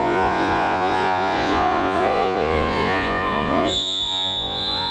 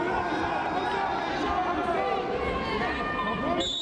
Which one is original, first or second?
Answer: second